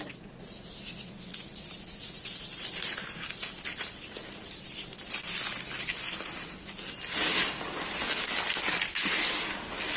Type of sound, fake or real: real